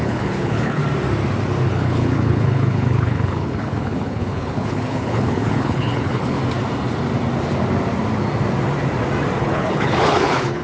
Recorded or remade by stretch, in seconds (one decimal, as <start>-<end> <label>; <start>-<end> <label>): 0.0-0.8 remade; 0.8-1.7 recorded; 1.7-6.4 remade; 6.4-9.4 recorded; 9.4-10.6 remade